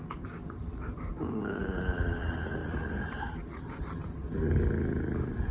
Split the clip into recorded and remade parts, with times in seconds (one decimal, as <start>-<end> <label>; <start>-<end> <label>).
0.0-5.5 recorded